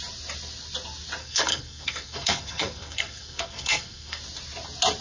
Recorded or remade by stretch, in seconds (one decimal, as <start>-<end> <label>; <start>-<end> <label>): 0.0-1.2 recorded; 1.2-4.2 remade; 4.2-5.0 recorded